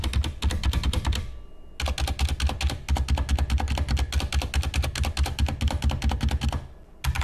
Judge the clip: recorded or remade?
recorded